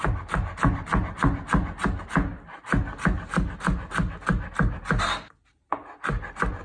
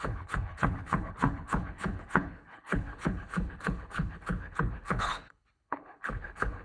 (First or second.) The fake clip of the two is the second